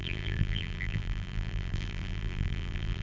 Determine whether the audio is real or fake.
fake